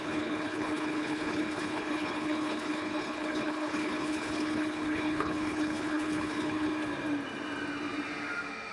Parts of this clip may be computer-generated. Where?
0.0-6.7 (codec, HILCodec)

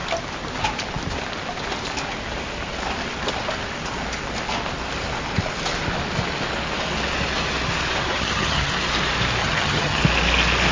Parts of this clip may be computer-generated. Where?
8.1-8.7 (vocoder, HiFi-GAN); 9.4-10.0

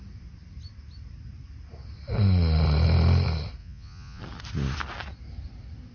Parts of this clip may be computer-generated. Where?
3.6-4.2 (vocoder, Vocos)

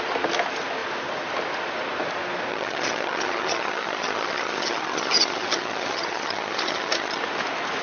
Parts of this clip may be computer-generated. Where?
2.5-7.2 (vocoder, HiFi-GAN)

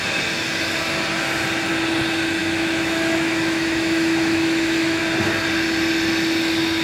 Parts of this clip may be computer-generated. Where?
2.4-5.0 (autoencoder, DAC-VAE)

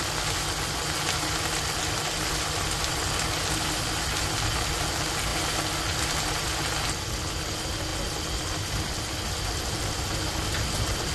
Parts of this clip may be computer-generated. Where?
none

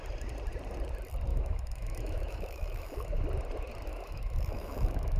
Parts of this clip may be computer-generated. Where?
1.3-3.1 (autoencoder, DAC-VAE); 3.9-5.2